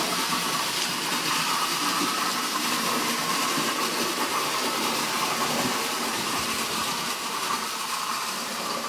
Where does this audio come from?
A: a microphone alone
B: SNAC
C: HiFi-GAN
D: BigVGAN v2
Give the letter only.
D